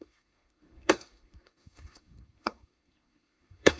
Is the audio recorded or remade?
remade